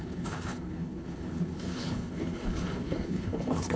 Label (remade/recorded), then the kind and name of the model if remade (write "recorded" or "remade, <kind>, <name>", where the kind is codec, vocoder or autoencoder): remade, codec, HILCodec